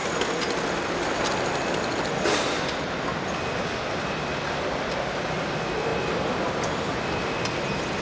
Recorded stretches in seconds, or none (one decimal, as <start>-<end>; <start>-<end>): 0.0-8.0

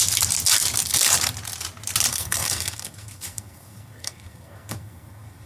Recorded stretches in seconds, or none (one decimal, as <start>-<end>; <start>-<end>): 0.0-2.1

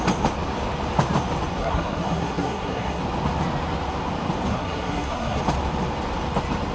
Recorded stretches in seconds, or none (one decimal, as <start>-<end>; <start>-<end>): 0.0-1.6; 3.0-4.5; 5.4-6.7

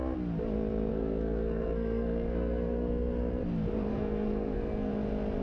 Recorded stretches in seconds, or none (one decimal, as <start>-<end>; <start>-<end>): 0.0-0.9; 3.4-3.9; 4.9-5.4

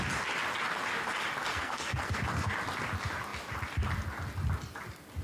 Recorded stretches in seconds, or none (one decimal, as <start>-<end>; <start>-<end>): 0.0-1.5; 2.2-5.2

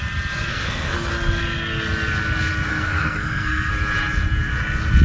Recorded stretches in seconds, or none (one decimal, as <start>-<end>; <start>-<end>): 0.0-0.5; 1.1-2.7; 3.7-5.0

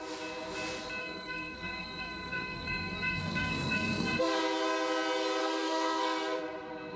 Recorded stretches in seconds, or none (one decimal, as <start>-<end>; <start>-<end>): 0.0-1.0; 4.4-5.4; 6.4-7.0